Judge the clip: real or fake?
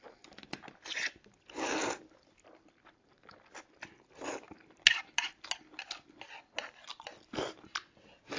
real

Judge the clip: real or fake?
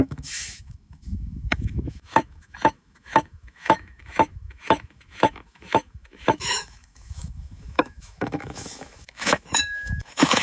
fake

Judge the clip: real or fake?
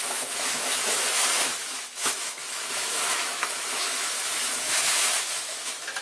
fake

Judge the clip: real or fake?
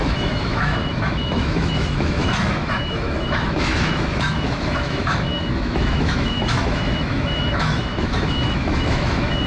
fake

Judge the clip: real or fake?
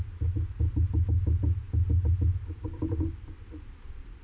real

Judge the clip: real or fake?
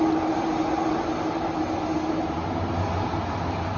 real